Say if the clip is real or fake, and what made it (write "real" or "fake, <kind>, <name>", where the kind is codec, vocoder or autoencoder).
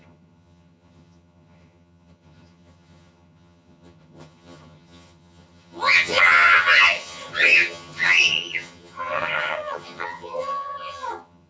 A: fake, vocoder, HiFi-GAN